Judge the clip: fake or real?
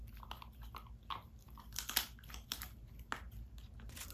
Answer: real